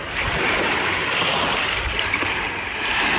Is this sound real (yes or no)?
yes